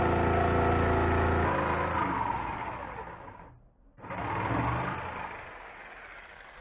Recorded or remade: recorded